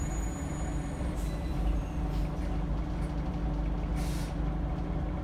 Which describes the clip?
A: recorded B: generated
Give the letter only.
A